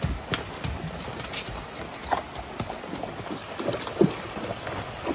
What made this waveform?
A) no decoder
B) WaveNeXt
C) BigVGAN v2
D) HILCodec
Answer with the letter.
A